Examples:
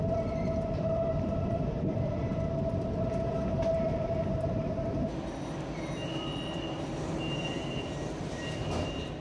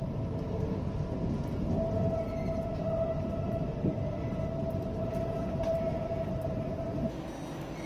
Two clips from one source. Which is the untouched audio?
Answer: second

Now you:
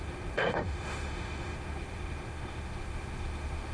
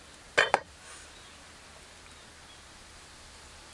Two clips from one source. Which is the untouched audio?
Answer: second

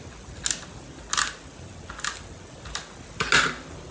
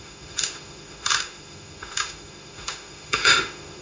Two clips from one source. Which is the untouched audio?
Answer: first